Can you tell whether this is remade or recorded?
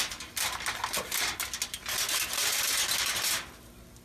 recorded